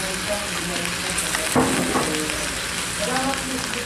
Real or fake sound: real